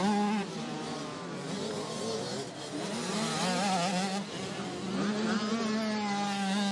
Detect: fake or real real